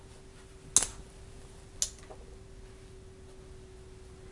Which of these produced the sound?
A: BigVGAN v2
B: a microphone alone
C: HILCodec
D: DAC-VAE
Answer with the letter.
B